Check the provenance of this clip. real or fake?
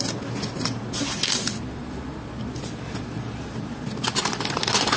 real